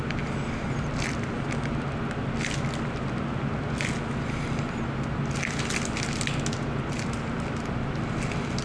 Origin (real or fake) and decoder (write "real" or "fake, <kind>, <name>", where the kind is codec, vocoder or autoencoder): real